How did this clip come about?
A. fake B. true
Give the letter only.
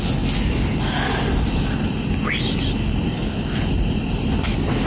B